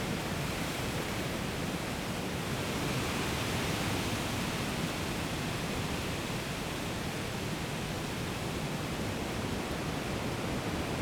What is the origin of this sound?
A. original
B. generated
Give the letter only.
B